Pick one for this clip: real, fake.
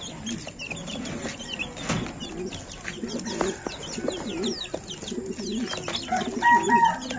real